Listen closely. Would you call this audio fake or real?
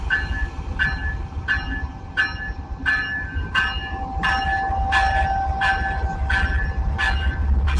real